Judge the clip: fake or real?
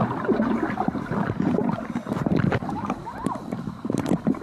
fake